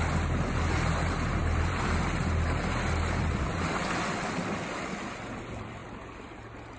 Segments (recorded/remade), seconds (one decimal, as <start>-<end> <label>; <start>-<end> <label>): 0.0-1.4 recorded; 1.4-2.0 remade; 2.0-6.8 recorded